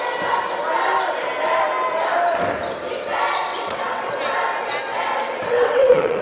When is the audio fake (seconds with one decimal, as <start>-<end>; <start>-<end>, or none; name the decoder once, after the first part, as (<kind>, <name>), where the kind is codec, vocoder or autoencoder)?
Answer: 3.5-4.1 (vocoder, WaveNeXt); 4.9-6.2